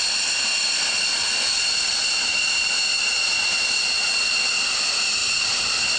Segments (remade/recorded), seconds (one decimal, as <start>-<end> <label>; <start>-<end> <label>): 0.0-6.0 recorded